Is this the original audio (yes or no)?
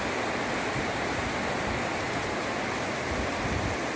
yes